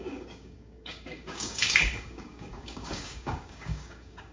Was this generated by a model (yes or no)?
yes